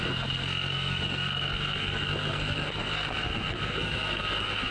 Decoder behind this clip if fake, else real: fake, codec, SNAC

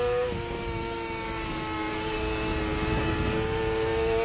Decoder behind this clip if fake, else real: fake, codec, DAC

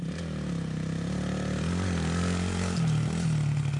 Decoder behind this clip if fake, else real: real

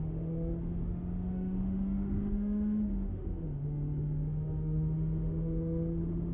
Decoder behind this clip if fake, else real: fake, autoencoder, DAC-VAE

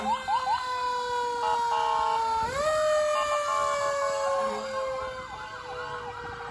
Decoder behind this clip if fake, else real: real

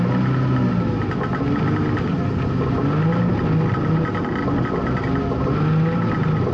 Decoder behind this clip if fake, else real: real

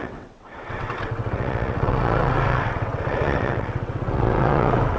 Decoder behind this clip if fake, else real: fake, vocoder, WaveNeXt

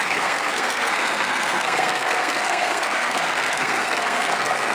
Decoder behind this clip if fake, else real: fake, codec, SNAC